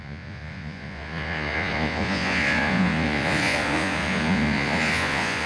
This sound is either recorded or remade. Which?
remade